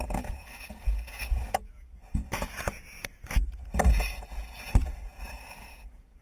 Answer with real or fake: fake